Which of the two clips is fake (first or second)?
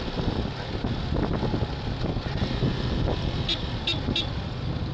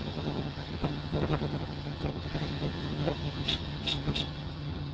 second